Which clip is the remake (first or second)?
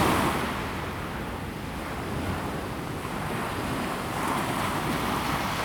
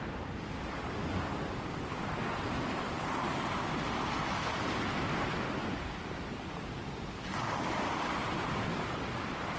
second